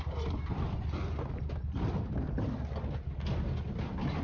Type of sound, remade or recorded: recorded